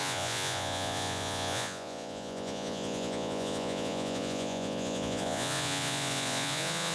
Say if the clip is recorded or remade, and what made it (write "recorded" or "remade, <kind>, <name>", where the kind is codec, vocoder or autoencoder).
remade, vocoder, Vocos